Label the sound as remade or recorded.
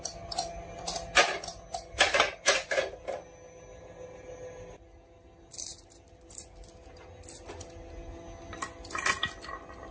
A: recorded